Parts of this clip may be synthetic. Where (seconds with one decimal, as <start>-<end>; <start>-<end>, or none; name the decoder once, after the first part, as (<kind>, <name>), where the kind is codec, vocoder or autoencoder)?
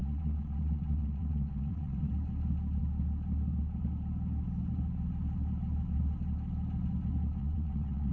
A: 0.0-2.1 (vocoder, WaveNeXt); 7.4-8.1